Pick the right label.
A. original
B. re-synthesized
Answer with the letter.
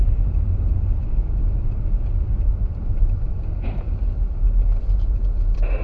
B